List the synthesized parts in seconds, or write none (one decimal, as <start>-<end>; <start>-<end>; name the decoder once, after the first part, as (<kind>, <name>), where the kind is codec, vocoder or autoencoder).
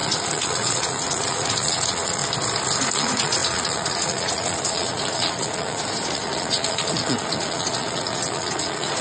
0.0-2.2 (vocoder, Vocos); 2.8-9.0